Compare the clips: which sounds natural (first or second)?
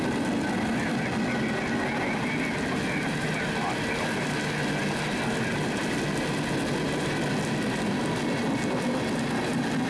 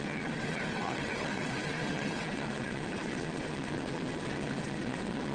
first